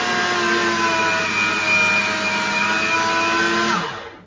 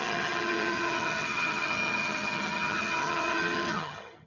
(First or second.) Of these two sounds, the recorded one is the first